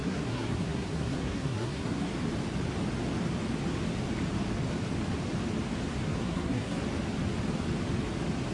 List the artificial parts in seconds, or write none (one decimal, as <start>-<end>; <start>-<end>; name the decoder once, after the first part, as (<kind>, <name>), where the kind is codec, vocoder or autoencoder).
0.0-2.1 (codec, SNAC); 6.2-6.8